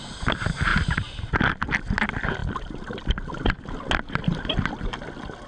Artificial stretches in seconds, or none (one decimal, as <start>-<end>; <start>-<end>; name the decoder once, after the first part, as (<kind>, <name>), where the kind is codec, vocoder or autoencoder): none